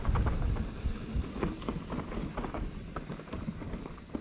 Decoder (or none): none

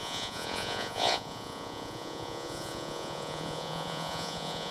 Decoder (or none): vocoder, Vocos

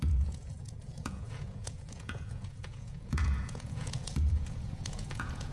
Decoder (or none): vocoder, Vocos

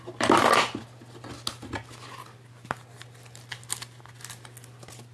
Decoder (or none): none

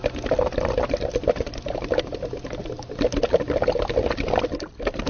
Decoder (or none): none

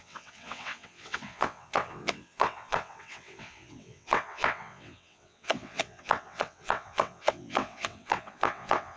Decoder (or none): vocoder, WaveNeXt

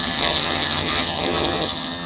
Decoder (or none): vocoder, HiFi-GAN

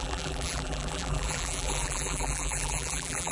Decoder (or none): vocoder, BigVGAN v2